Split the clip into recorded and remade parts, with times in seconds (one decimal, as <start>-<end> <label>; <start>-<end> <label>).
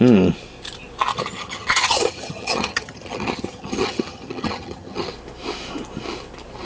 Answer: 0.0-1.1 recorded; 1.1-5.1 remade; 5.1-6.7 recorded